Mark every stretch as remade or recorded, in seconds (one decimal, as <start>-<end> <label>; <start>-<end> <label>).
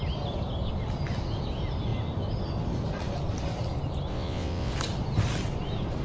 0.0-4.1 recorded; 4.1-4.7 remade; 4.7-6.0 recorded